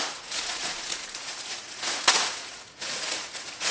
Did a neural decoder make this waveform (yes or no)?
yes